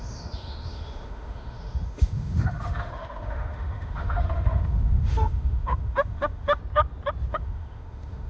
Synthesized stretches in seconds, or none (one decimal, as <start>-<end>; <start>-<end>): 0.0-6.6; 7.3-8.3